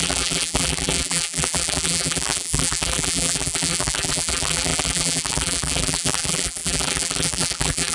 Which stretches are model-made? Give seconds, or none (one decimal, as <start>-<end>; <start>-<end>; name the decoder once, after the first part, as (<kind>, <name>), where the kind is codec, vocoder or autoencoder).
0.0-7.9 (vocoder, BigVGAN v2)